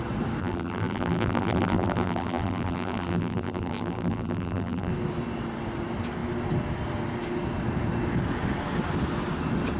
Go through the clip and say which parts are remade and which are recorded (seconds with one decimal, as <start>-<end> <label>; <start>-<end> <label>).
0.0-0.4 recorded; 0.4-4.9 remade; 4.9-9.8 recorded